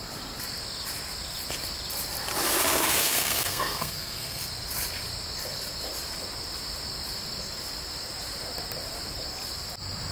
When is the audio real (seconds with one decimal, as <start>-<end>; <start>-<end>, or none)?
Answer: 0.0-2.7; 4.4-10.1